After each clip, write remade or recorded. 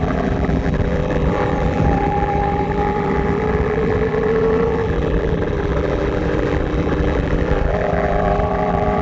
remade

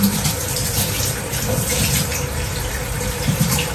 remade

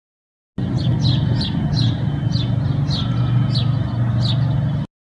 recorded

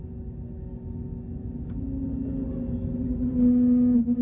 recorded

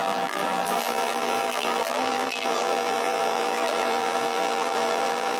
remade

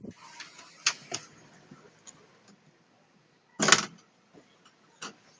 recorded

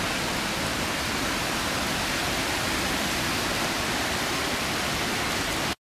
recorded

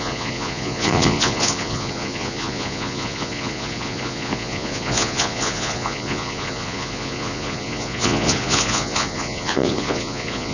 remade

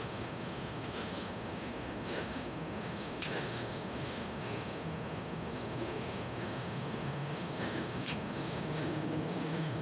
remade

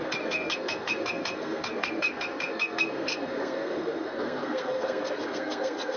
remade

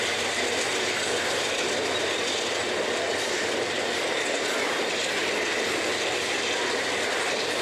recorded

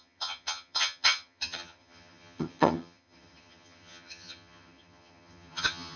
remade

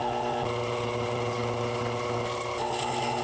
recorded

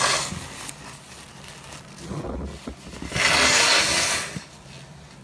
recorded